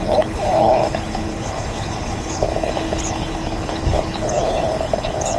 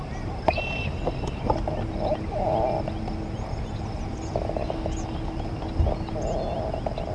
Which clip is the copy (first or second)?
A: first